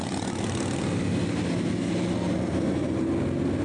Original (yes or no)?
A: yes